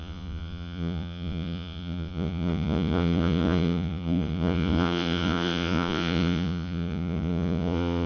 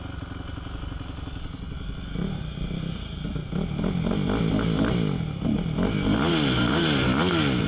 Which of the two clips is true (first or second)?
second